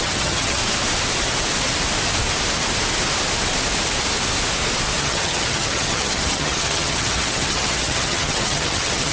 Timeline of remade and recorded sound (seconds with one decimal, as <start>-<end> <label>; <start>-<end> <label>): 0.0-0.6 remade; 0.6-5.0 recorded; 5.0-9.1 remade